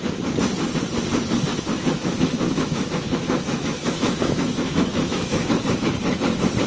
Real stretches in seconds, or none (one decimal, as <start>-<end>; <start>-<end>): 0.0-1.5; 5.5-6.7